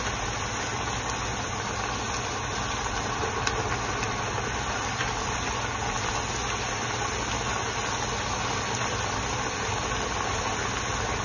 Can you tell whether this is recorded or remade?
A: recorded